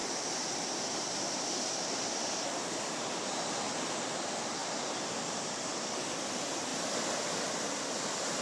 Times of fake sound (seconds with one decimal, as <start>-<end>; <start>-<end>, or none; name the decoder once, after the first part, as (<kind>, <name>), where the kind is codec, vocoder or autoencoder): 0.0-6.7 (vocoder, BigVGAN v2); 7.4-8.4